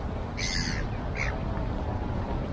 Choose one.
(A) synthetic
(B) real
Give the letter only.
B